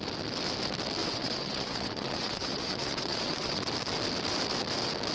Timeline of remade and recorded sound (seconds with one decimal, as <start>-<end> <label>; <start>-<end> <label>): 0.0-1.0 recorded; 1.0-3.6 remade; 3.6-5.1 recorded